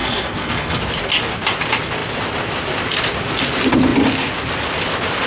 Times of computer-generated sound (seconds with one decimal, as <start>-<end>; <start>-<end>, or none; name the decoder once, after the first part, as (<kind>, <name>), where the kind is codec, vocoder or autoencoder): 0.0-0.8 (codec, SNAC)

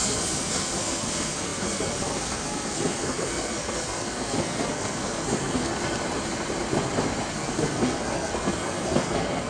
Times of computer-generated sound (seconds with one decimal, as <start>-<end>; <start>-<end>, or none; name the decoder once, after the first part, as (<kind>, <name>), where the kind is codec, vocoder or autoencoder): 0.0-5.7 (codec, SNAC); 7.3-9.5

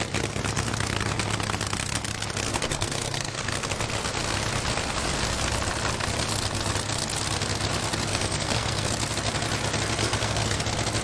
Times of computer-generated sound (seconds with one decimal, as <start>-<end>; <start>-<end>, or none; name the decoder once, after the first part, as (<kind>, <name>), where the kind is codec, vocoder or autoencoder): 2.5-3.7 (codec, SNAC); 8.1-8.9; 10.0-10.6

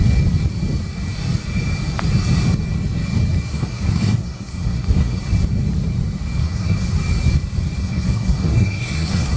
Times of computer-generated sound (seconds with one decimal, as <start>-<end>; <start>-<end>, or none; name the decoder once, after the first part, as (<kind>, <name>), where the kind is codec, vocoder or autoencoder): 3.5-5.2 (codec, SNAC); 6.4-6.9; 7.8-9.4